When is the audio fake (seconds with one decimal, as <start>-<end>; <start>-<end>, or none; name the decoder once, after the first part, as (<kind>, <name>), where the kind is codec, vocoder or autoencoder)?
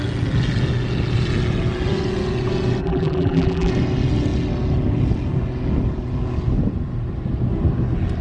2.8-3.7 (vocoder, BigVGAN v2)